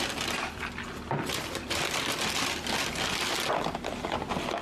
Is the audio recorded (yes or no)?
yes